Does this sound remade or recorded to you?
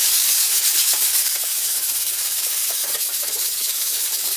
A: remade